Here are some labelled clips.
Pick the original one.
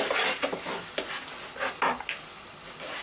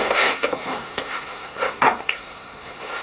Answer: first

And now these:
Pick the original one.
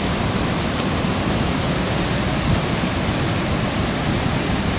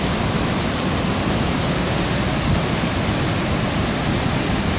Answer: second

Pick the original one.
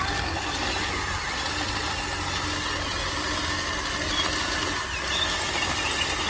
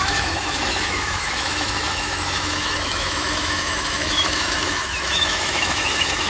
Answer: first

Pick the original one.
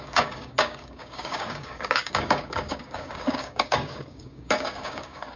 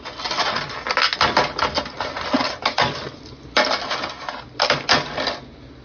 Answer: second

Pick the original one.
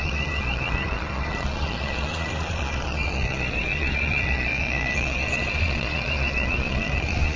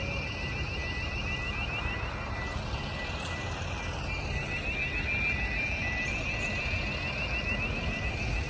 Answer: second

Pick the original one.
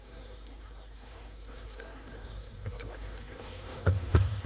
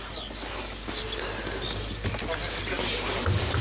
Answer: second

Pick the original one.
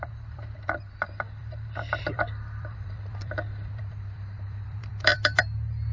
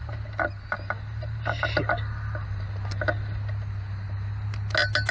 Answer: second